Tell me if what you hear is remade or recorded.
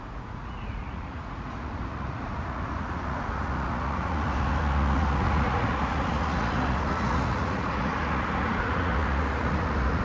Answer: remade